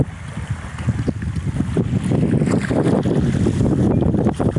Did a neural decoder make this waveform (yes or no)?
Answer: no